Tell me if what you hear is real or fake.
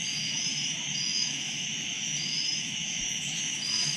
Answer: fake